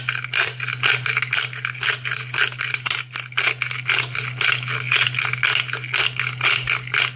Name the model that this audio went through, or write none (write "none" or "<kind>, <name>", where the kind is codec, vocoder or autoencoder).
none